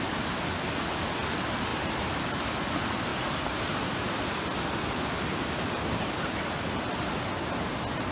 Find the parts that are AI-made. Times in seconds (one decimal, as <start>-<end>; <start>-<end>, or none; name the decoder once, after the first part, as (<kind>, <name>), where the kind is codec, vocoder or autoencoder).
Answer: 1.7-2.4 (vocoder, BigVGAN v2)